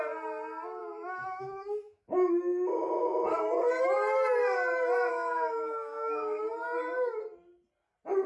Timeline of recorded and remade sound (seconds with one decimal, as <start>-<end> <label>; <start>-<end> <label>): 0.0-0.8 recorded; 0.8-2.8 remade; 2.8-5.1 recorded; 5.1-6.4 remade; 6.4-8.3 recorded